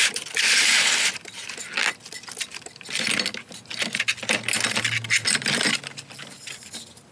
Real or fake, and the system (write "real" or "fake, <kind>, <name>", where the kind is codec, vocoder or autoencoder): real